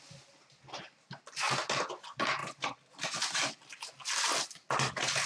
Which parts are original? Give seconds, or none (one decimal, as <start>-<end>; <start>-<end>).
0.0-5.3

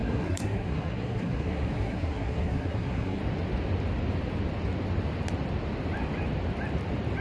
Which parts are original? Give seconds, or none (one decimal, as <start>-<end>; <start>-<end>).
3.2-7.2

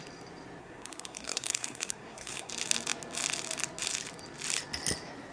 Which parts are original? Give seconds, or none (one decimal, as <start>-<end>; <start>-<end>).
0.0-0.6; 2.5-5.3

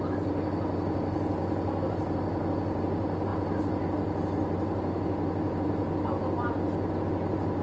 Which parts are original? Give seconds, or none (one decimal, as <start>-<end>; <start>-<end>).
0.0-7.6